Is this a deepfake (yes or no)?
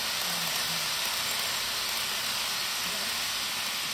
no